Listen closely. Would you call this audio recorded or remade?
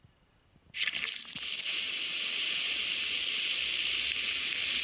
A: recorded